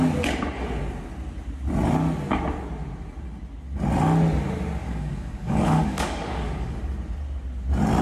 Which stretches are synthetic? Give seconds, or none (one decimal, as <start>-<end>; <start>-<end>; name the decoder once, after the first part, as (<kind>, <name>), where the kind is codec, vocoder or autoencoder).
4.8-6.8 (codec, DAC)